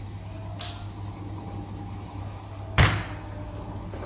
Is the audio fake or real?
real